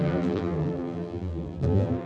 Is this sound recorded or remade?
remade